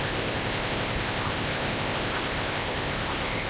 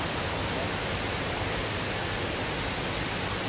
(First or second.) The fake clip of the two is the first